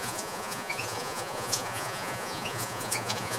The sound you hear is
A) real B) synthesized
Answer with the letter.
B